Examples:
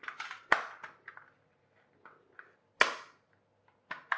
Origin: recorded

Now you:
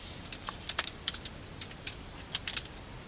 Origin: remade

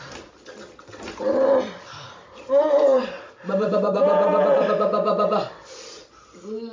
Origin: remade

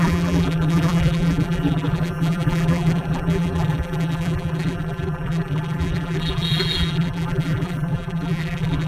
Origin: remade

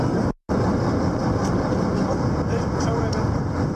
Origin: recorded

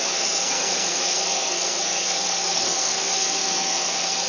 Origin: remade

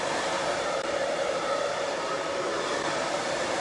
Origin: remade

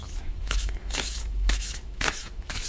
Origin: remade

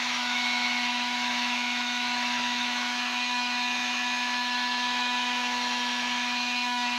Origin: remade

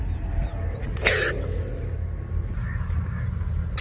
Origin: recorded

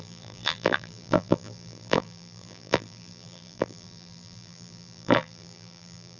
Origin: remade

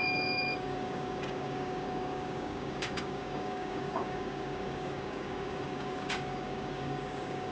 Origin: remade